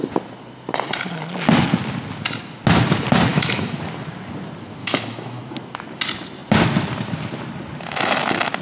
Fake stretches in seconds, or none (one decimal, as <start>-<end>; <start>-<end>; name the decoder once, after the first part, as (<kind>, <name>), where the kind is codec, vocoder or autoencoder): 3.3-3.8 (autoencoder, DAC-VAE); 4.8-5.4